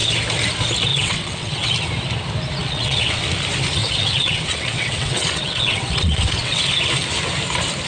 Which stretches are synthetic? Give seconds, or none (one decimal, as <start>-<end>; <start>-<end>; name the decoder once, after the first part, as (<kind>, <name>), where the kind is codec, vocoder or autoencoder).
0.9-1.7 (vocoder, WaveNeXt); 2.6-3.2; 3.8-6.6